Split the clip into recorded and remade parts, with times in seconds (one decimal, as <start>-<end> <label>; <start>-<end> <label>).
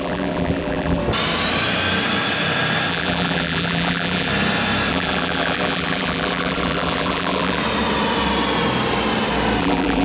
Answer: 0.0-1.0 remade; 1.0-2.9 recorded; 2.9-4.3 remade; 4.3-4.9 recorded; 4.9-7.6 remade; 7.6-9.6 recorded; 9.6-10.0 remade